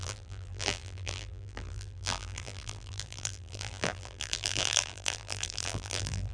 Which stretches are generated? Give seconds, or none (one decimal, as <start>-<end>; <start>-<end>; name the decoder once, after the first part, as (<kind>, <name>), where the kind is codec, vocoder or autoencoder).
0.0-6.3 (vocoder, BigVGAN v2)